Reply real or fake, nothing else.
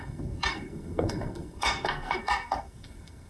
fake